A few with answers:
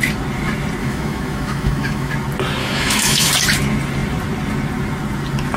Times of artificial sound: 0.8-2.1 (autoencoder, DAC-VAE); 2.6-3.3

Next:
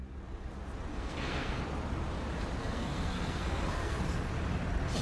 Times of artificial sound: 0.9-1.6 (codec, SNAC); 2.6-4.0